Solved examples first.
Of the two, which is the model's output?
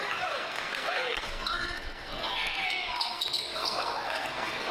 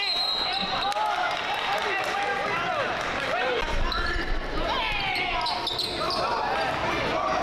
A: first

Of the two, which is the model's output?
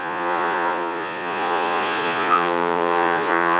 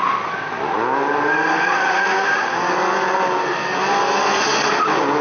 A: first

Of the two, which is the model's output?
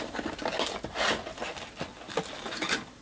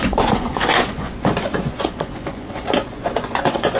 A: second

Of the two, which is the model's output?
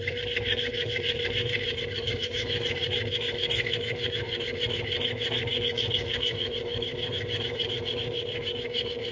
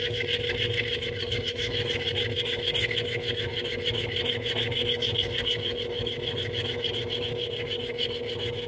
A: first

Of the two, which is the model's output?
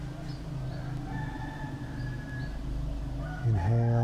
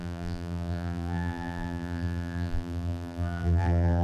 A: second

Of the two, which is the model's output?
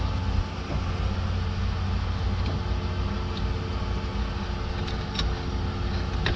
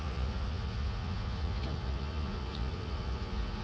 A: second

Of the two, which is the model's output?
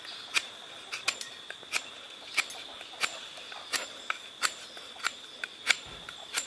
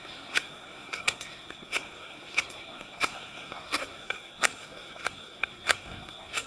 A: second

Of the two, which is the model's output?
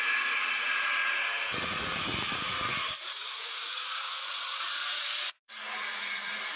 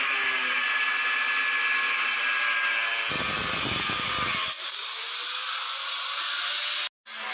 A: first